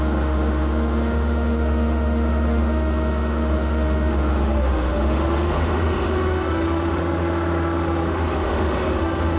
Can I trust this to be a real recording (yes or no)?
no